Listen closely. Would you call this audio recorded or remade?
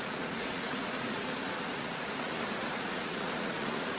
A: remade